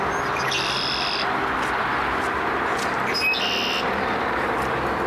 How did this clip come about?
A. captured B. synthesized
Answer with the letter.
A